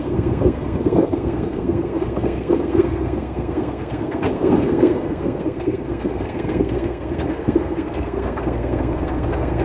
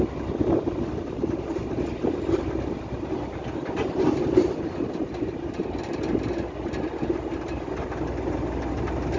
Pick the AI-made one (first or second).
first